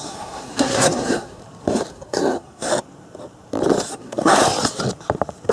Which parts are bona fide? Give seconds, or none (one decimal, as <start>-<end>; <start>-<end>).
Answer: 1.4-1.9; 2.7-3.9; 4.4-5.5